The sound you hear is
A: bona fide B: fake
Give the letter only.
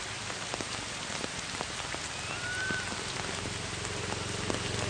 A